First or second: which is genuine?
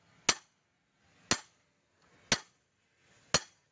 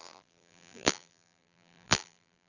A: first